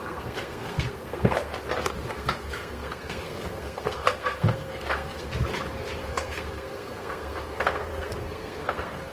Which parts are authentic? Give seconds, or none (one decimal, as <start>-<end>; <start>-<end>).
1.5-2.1; 5.3-6.0

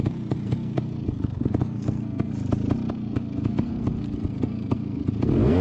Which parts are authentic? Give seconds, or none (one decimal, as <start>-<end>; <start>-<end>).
2.3-2.9

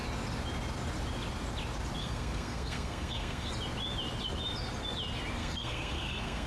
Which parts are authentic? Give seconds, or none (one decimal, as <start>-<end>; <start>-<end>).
0.0-2.0; 3.5-5.4

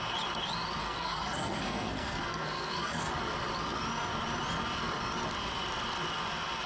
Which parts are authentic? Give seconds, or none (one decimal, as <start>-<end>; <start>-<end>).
0.0-0.8; 3.1-6.7

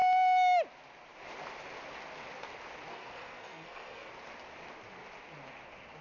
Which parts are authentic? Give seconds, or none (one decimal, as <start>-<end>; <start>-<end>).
0.0-2.9; 4.1-6.0

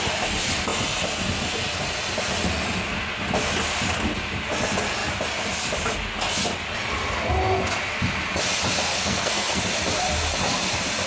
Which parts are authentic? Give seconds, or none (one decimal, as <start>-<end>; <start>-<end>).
0.0-8.9; 9.6-11.1

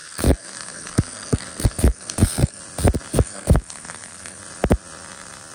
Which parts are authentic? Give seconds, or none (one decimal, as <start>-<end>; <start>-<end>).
2.6-3.1; 4.4-5.5